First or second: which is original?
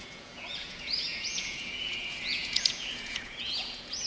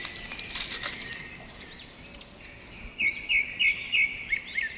second